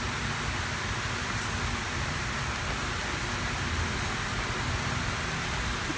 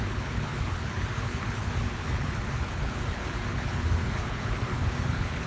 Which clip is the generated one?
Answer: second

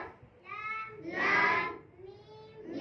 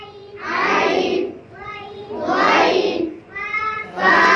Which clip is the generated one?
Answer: second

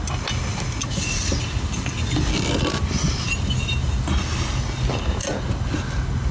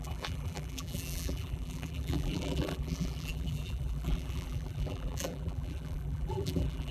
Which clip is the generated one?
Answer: second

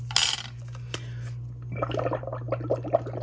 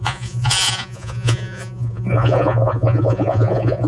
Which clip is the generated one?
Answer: second